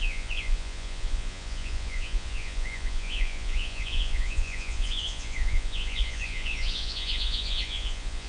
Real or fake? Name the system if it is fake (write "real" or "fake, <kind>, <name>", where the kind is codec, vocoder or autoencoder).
fake, vocoder, Vocos